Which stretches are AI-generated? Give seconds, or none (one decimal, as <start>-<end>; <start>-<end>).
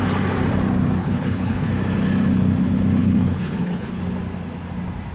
1.0-1.7; 3.0-4.0